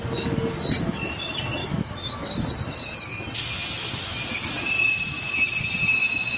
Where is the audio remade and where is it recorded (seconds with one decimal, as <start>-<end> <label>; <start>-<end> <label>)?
0.0-1.6 recorded; 1.6-2.3 remade; 2.3-6.4 recorded